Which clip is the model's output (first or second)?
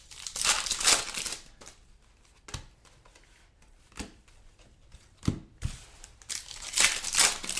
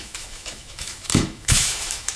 second